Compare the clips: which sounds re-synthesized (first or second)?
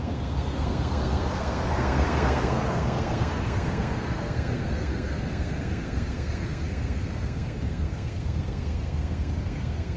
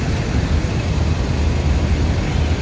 first